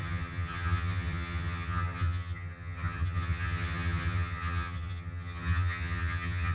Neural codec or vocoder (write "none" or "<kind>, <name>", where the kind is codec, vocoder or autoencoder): vocoder, HiFi-GAN